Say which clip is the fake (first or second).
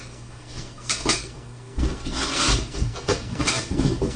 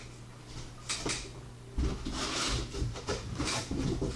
first